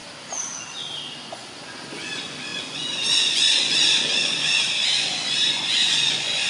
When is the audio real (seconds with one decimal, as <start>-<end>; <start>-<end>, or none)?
0.0-1.1